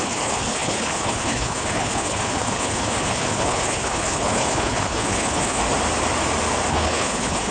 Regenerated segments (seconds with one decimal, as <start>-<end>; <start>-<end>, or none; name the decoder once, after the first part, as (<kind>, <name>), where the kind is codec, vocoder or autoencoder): 0.0-5.6 (codec, HILCodec); 6.7-7.5